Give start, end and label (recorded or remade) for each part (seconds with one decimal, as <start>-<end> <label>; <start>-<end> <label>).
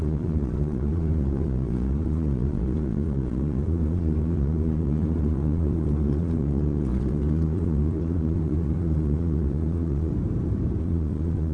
0.0-10.1 remade; 10.1-10.8 recorded; 10.8-11.5 remade